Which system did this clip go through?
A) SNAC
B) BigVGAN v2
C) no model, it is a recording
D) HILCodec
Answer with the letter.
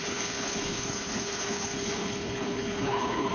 D